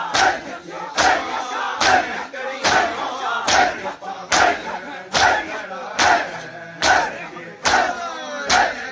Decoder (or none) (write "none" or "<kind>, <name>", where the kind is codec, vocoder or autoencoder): none